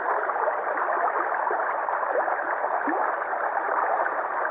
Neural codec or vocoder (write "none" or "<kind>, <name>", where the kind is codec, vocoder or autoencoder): none